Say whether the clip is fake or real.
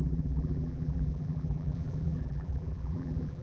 fake